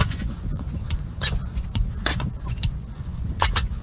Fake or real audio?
fake